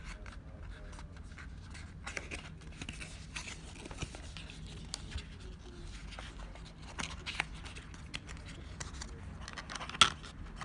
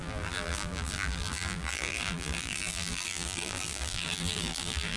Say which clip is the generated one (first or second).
second